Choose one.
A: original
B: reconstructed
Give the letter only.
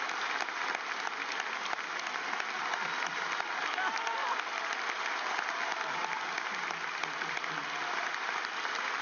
A